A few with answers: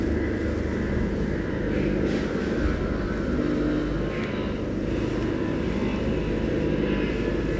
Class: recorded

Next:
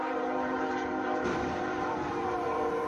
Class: remade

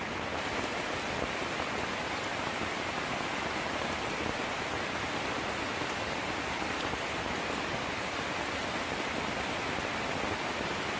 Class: remade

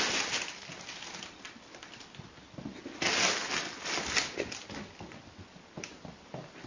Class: recorded